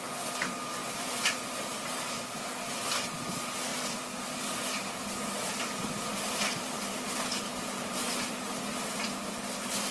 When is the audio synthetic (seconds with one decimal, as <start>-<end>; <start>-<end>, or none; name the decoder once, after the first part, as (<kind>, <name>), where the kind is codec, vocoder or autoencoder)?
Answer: 0.8-2.0 (vocoder, BigVGAN v2); 3.7-8.6